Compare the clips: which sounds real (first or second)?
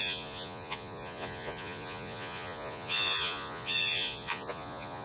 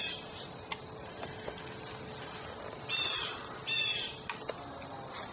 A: second